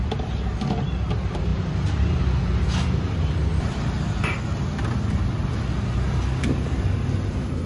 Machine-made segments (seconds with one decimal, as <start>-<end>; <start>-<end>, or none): none